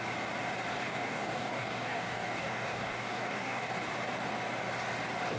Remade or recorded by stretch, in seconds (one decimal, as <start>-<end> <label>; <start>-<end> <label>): 0.0-0.7 recorded; 0.7-3.7 remade; 3.7-5.4 recorded